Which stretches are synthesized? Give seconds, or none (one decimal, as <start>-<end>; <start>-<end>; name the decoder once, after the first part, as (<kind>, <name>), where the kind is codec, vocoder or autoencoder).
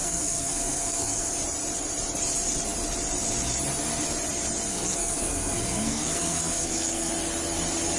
0.0-1.3 (codec, SNAC); 4.7-7.1